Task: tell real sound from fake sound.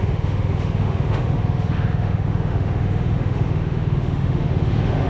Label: fake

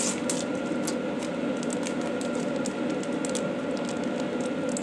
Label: real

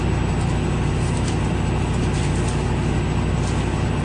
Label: real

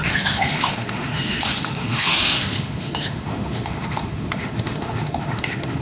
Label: fake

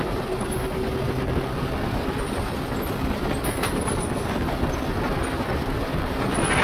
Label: real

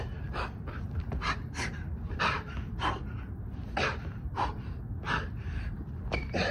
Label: real